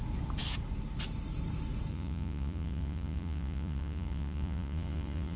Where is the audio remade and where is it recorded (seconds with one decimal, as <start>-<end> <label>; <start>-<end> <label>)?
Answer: 0.0-1.9 recorded; 1.9-5.4 remade